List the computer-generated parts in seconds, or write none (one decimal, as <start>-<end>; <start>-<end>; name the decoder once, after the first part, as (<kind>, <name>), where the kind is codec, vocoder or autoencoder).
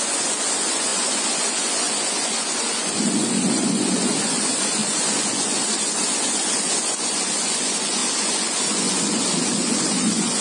0.0-10.4 (vocoder, Vocos)